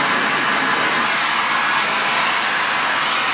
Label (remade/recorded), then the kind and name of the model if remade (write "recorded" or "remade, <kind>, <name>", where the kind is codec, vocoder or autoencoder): recorded